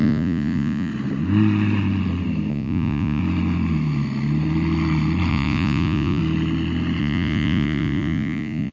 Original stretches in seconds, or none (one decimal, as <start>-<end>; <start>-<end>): 0.9-2.5; 3.2-5.3; 6.2-7.0